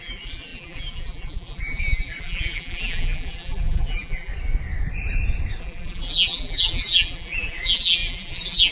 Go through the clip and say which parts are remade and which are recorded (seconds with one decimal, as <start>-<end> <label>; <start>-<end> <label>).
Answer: 0.0-4.3 remade; 4.3-5.6 recorded; 5.6-8.7 remade